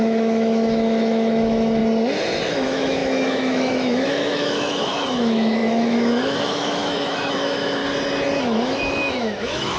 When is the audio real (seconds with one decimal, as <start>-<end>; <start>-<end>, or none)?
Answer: 1.8-2.5; 7.8-8.4